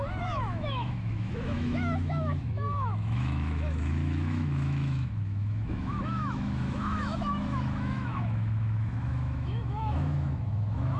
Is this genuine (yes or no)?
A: no